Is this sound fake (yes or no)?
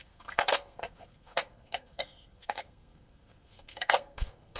yes